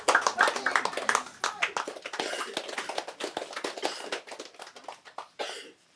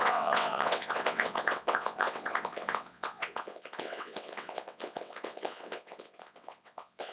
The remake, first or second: second